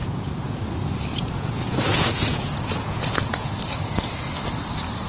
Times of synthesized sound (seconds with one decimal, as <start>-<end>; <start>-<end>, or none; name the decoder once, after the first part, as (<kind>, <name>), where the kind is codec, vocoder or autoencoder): 0.0-0.6 (vocoder, Vocos); 1.1-3.5